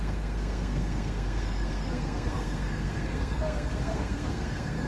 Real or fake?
fake